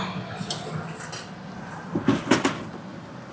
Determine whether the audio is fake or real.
real